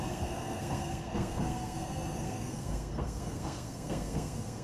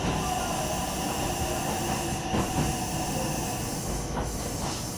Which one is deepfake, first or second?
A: first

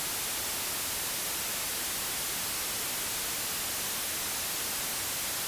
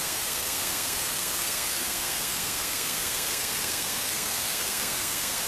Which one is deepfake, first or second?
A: second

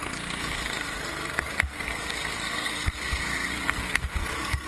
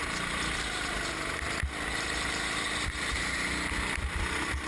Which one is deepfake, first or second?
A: first